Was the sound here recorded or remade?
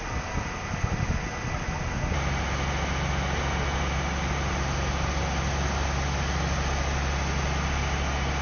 recorded